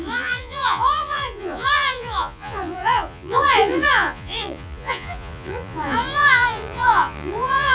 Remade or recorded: remade